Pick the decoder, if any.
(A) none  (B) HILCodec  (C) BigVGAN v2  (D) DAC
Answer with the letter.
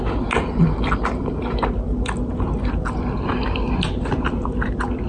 A